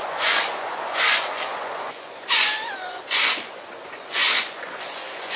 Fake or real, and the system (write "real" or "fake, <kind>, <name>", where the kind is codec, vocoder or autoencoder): fake, vocoder, Vocos